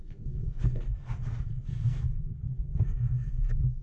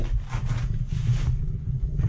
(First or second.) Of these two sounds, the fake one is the first